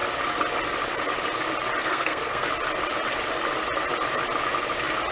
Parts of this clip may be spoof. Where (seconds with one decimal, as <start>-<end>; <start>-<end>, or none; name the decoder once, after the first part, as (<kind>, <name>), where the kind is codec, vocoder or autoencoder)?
1.8-2.5 (codec, SNAC)